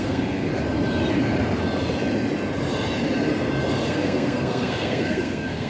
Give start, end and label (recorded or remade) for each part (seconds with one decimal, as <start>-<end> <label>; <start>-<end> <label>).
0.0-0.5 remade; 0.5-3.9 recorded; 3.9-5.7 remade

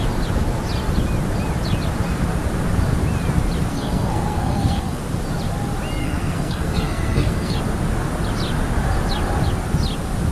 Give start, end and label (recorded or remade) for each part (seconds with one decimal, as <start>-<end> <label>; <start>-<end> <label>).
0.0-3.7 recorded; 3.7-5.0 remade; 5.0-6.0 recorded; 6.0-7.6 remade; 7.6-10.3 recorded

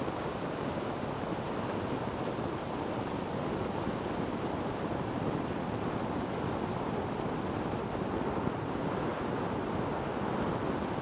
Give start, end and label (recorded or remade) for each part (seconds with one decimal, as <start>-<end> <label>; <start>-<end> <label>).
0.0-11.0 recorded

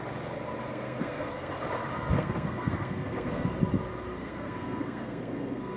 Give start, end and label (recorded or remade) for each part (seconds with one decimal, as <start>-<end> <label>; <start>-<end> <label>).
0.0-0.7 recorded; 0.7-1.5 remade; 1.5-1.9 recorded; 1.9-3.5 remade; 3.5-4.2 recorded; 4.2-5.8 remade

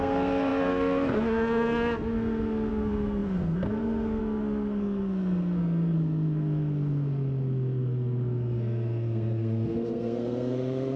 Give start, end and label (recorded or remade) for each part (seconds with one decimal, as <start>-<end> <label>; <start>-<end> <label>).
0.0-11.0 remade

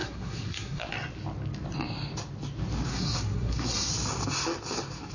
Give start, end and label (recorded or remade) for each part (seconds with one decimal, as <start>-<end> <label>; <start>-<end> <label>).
0.0-0.9 remade; 0.9-2.9 recorded; 2.9-3.9 remade; 3.9-5.1 recorded